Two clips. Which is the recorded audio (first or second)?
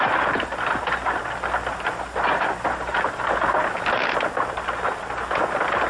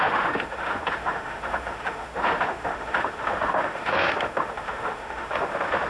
first